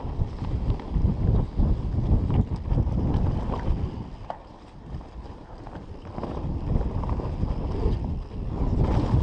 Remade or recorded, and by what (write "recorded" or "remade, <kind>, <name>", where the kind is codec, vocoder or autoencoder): recorded